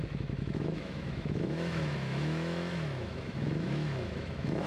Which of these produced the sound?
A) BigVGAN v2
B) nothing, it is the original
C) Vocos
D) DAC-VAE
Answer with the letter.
D